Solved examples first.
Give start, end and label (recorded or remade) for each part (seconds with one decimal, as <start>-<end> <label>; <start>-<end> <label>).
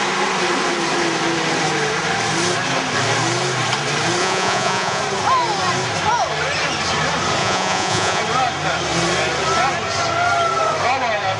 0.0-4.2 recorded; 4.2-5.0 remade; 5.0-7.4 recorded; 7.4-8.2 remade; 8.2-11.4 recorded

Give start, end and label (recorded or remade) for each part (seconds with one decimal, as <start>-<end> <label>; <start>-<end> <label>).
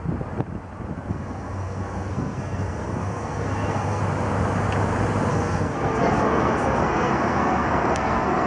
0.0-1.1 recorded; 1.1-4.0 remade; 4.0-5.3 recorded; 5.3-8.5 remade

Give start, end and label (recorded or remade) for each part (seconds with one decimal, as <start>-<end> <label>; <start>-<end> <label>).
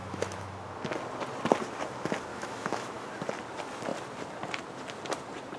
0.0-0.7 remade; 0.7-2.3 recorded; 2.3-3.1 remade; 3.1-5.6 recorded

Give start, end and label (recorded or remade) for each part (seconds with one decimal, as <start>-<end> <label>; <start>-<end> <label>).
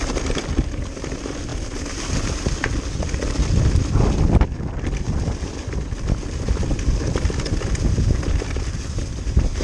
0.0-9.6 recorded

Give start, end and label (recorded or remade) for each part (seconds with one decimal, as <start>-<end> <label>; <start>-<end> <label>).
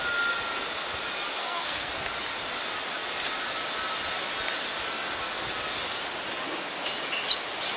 0.0-1.3 recorded; 1.3-1.9 remade; 1.9-7.8 recorded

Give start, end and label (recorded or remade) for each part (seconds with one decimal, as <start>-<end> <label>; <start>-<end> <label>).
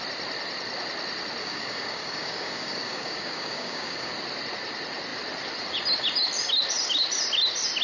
0.0-1.4 recorded; 1.4-4.1 remade; 4.1-7.8 recorded